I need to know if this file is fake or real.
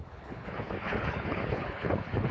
fake